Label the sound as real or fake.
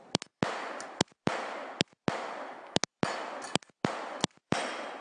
real